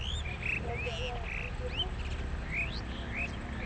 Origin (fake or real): real